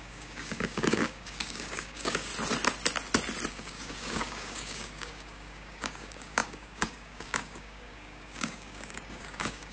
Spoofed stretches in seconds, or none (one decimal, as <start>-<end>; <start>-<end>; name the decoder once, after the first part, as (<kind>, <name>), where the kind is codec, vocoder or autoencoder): 0.0-2.3 (codec, DAC); 3.5-9.7